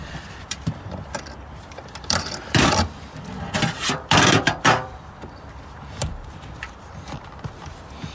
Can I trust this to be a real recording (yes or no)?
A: no